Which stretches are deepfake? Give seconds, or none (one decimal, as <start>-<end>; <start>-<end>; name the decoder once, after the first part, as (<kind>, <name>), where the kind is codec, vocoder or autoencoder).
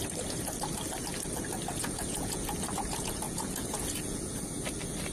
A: 1.8-2.5 (vocoder, Vocos); 2.9-4.2